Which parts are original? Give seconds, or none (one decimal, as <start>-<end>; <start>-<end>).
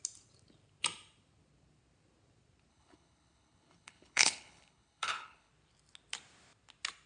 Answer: 0.0-2.7; 5.5-7.1